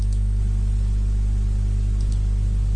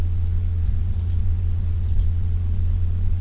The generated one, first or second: second